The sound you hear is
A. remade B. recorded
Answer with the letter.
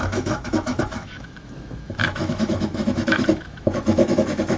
A